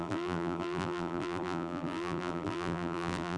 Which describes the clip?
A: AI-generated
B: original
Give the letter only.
A